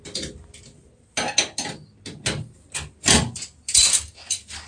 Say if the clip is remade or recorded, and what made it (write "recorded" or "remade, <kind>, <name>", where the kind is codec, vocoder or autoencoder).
recorded